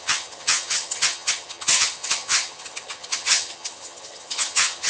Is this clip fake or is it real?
fake